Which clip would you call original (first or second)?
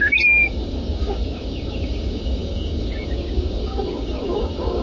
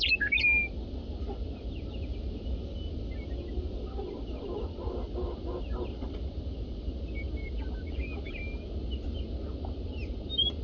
second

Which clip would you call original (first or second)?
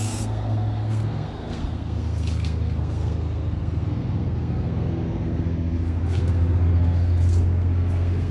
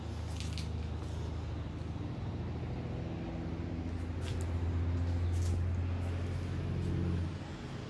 second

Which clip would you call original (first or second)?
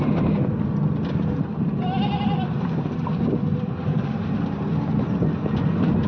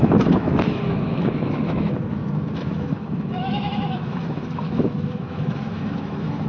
first